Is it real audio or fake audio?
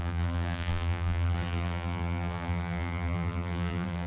fake